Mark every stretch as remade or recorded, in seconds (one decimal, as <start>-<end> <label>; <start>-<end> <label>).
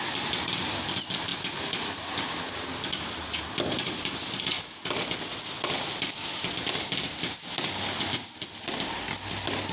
0.0-9.7 recorded